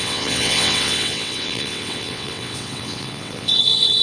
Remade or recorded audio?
remade